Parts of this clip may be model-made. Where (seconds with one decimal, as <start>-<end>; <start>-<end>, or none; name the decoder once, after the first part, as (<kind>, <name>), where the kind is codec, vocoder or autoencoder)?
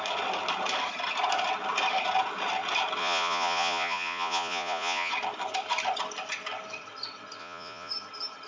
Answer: 3.0-5.1 (vocoder, Vocos); 7.4-7.9